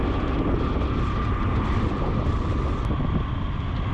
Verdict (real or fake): real